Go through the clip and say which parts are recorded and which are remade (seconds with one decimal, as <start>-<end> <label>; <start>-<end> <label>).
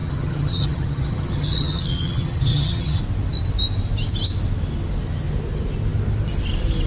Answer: 0.0-3.0 remade; 3.0-6.9 recorded